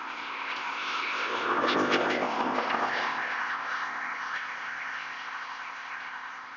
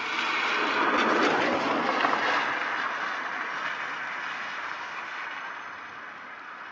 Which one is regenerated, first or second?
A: first